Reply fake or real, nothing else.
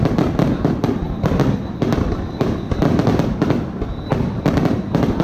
real